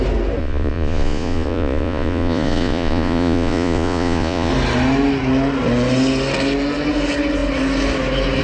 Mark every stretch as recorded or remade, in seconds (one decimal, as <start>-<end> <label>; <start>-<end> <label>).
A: 0.0-0.4 recorded; 0.4-4.5 remade; 4.5-8.4 recorded